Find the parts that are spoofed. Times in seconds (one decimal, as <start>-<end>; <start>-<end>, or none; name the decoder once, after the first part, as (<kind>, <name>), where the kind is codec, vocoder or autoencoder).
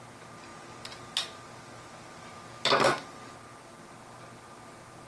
none